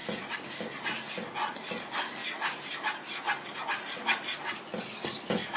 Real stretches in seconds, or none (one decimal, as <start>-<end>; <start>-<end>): 0.0-5.6